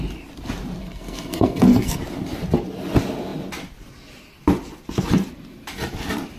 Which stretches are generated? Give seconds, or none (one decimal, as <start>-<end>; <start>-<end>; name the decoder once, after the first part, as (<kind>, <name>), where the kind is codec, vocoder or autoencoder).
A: 0.8-2.0 (codec, SNAC)